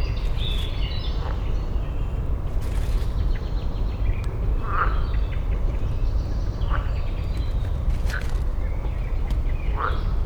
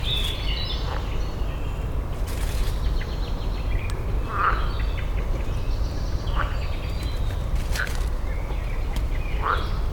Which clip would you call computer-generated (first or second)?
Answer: first